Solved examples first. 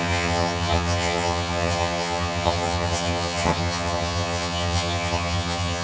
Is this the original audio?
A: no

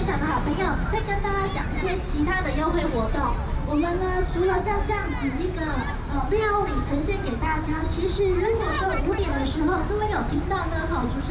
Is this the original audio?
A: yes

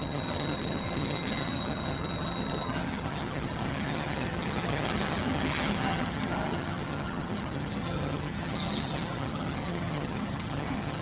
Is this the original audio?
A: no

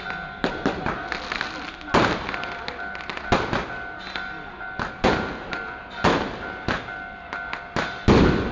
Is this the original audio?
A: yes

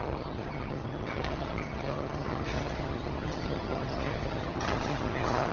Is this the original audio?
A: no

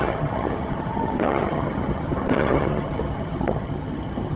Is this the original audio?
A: no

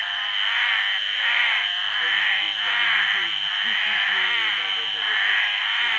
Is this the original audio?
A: yes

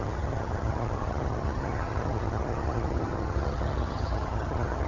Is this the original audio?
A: no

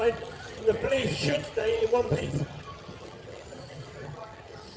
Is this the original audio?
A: no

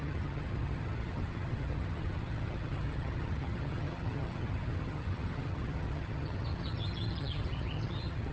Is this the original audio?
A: no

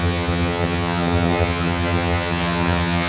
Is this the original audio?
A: no